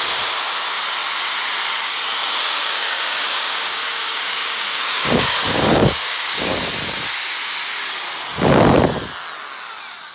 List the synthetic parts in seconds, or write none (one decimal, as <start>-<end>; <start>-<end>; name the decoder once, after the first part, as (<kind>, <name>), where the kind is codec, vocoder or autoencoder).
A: 2.2-6.6 (codec, DAC)